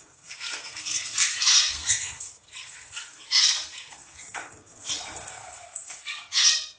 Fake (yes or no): yes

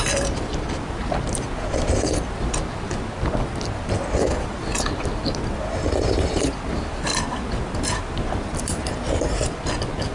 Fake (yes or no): no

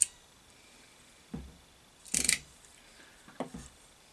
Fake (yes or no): yes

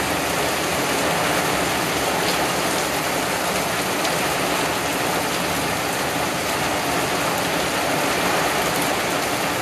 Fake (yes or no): no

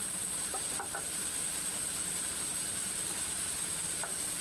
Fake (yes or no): yes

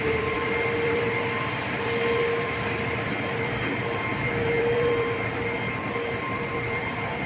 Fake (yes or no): yes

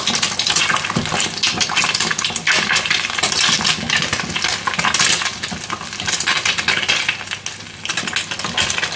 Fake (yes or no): no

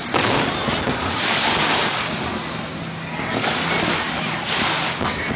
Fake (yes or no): no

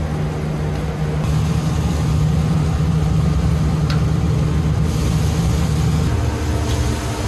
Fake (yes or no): no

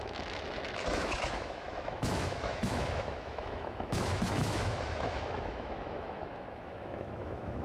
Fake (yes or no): yes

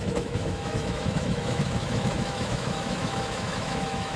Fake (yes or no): yes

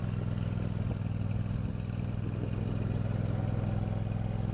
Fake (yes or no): no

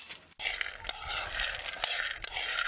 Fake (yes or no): no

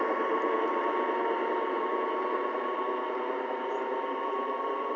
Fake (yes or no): yes